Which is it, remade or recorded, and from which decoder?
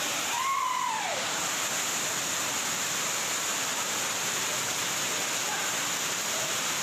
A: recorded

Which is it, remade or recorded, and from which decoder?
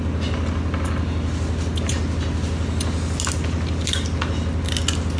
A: recorded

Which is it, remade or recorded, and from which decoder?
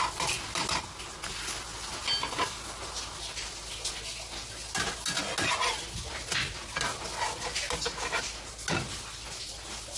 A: recorded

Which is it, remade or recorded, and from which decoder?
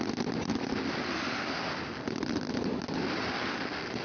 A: recorded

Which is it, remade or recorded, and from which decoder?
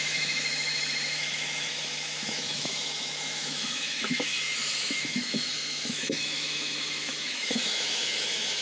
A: remade, autoencoder, DAC-VAE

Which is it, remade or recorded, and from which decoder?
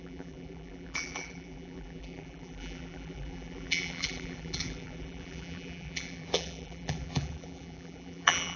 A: remade, vocoder, BigVGAN v2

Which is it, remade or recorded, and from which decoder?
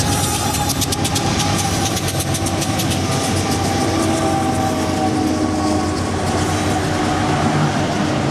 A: recorded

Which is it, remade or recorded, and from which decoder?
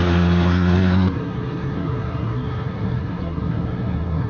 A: remade, codec, SNAC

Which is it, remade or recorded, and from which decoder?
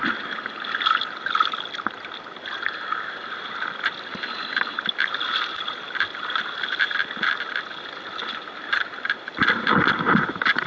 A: recorded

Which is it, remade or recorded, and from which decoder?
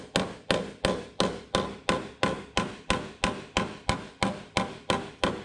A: recorded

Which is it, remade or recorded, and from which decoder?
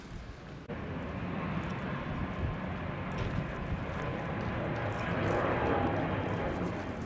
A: recorded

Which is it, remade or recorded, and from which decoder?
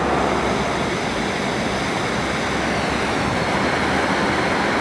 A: recorded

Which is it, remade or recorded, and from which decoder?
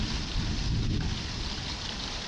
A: recorded